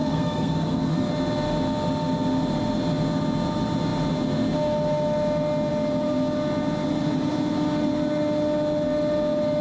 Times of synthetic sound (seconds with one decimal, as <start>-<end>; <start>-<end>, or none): 0.0-1.1